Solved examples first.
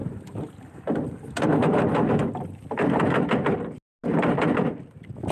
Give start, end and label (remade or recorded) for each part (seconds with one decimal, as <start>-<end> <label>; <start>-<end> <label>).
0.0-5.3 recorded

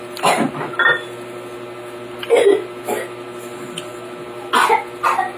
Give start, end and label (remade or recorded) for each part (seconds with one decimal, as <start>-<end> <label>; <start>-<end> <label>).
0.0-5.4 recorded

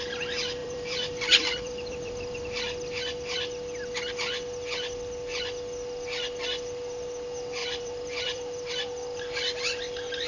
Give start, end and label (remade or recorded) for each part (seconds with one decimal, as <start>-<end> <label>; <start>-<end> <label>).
0.0-0.6 recorded; 0.6-2.4 remade; 2.4-7.6 recorded; 7.6-8.7 remade; 8.7-10.3 recorded

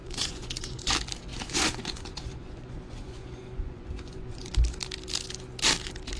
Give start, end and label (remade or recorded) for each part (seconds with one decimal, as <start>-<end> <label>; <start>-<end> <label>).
0.0-0.9 remade; 0.9-1.3 recorded; 1.3-4.5 remade; 4.5-6.2 recorded

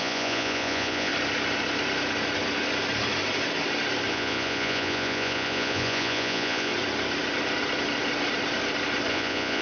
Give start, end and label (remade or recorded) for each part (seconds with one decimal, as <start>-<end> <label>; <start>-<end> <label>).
0.0-1.1 remade; 1.1-4.1 recorded; 4.1-6.7 remade; 6.7-9.1 recorded; 9.1-9.6 remade